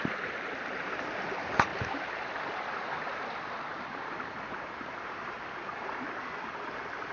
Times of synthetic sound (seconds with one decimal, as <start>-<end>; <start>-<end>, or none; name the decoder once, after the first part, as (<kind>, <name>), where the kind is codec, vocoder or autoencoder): none